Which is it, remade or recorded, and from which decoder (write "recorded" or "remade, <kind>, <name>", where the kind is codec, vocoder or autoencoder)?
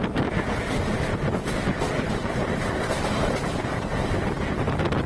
recorded